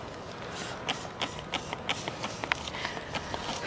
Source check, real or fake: real